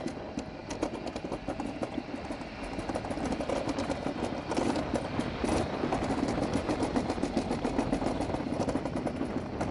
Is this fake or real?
real